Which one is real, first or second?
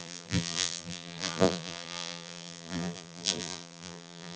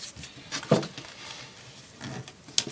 second